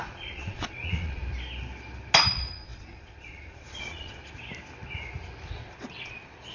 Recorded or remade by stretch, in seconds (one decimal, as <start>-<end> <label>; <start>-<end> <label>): 0.0-1.2 remade; 1.2-2.3 recorded; 2.3-4.2 remade; 4.2-5.5 recorded; 5.5-6.5 remade